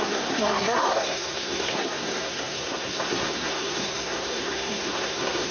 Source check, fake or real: fake